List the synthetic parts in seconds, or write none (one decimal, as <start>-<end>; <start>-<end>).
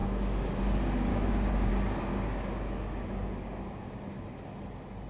0.0-0.6; 1.1-1.7; 2.1-4.0